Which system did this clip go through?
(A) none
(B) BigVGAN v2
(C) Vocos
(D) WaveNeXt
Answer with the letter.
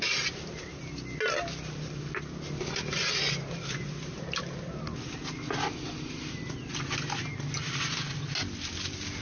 A